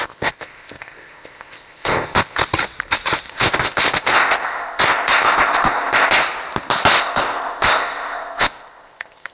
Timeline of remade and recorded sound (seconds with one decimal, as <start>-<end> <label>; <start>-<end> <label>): 0.0-2.4 remade; 2.4-3.3 recorded; 3.3-6.2 remade; 6.2-7.0 recorded; 7.0-9.3 remade